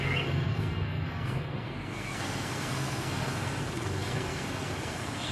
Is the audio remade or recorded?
remade